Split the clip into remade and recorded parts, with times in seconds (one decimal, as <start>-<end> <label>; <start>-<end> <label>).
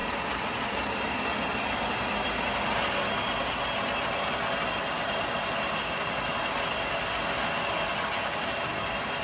0.0-9.2 recorded